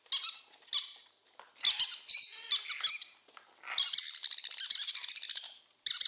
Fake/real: real